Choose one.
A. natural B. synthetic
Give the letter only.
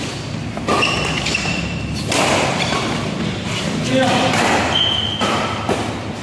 A